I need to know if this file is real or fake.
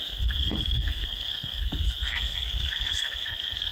fake